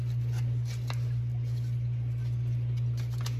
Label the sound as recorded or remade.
recorded